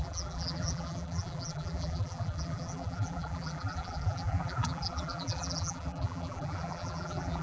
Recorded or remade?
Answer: remade